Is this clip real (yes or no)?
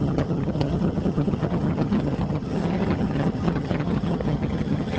no